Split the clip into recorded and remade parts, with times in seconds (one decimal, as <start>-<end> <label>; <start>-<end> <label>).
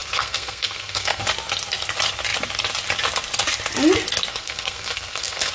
0.0-1.2 remade; 1.2-4.3 recorded; 4.3-5.5 remade